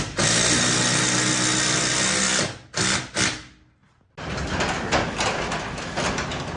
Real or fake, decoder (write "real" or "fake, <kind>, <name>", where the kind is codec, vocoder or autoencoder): real